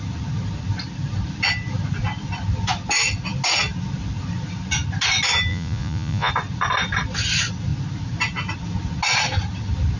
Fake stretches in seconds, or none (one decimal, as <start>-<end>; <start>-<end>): 5.5-6.3